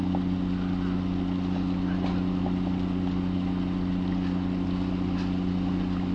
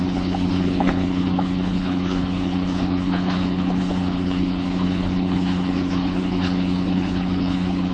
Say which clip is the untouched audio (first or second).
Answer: first